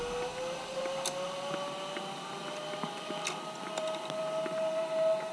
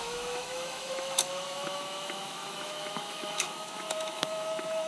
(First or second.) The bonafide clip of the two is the first